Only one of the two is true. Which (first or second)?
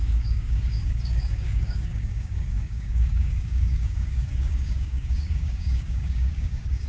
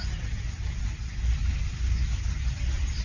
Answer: second